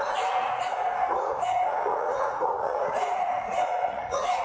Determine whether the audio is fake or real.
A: fake